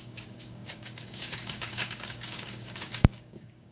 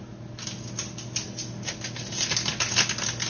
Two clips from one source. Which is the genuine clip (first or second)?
second